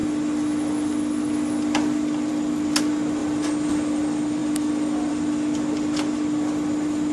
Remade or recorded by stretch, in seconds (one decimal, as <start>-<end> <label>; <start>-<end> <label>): 0.0-7.1 recorded